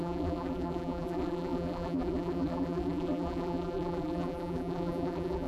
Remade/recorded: remade